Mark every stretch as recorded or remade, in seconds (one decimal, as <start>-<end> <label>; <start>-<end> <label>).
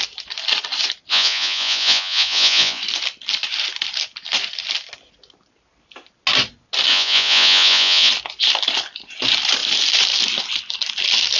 0.0-1.1 recorded; 1.1-2.8 remade; 2.8-6.9 recorded; 6.9-8.1 remade; 8.1-11.4 recorded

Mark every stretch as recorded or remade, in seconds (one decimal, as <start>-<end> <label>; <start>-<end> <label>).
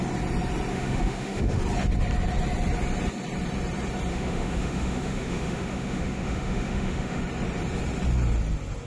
0.0-0.7 recorded; 0.7-1.6 remade; 1.6-4.1 recorded; 4.1-7.2 remade; 7.2-8.9 recorded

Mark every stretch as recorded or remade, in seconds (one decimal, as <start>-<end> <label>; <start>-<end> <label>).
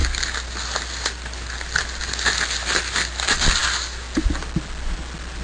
0.0-5.4 recorded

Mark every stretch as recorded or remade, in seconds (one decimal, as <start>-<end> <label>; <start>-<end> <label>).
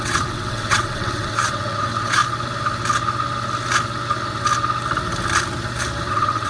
0.0-2.2 remade; 2.2-6.1 recorded; 6.1-6.5 remade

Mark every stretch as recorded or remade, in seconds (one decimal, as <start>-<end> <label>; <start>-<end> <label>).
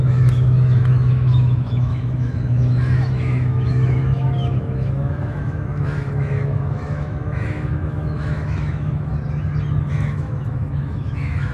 0.0-9.1 remade; 9.1-9.9 recorded; 9.9-11.5 remade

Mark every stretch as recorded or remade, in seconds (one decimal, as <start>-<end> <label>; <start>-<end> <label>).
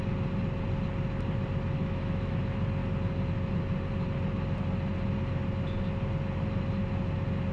0.0-1.8 recorded; 1.8-2.4 remade; 2.4-7.5 recorded